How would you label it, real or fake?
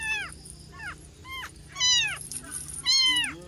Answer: real